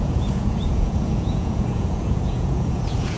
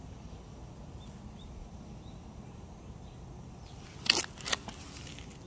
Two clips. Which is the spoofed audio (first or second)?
first